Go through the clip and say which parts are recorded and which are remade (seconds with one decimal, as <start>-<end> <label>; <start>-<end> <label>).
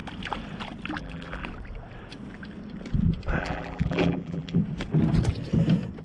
0.0-1.0 recorded; 1.0-1.4 remade; 1.4-3.4 recorded; 3.4-4.6 remade; 4.6-6.0 recorded